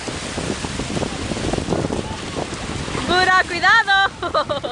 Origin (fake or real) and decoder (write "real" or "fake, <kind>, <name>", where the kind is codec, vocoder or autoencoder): real